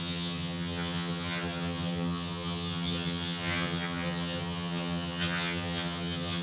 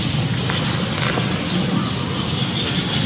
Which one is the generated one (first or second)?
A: first